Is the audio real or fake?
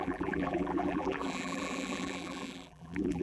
fake